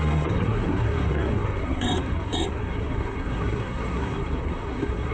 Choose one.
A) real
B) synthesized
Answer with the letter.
B